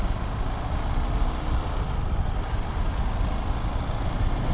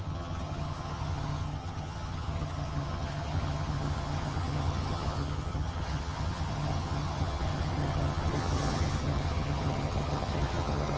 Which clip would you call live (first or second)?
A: first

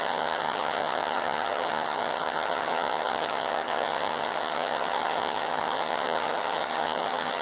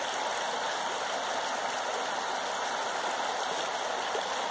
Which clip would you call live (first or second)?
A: second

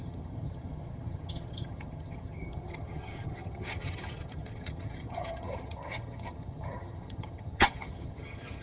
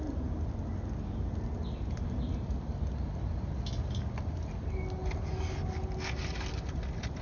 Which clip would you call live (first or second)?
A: second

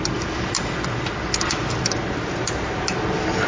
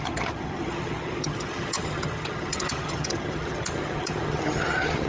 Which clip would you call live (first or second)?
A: first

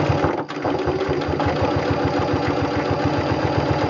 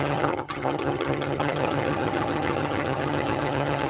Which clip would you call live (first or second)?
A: first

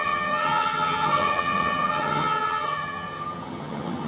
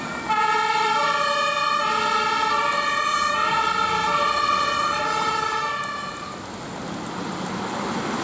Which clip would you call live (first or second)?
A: second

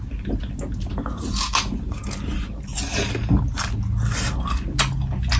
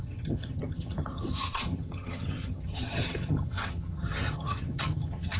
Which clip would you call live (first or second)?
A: first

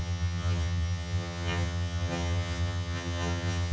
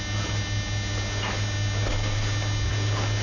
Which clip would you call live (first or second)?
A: second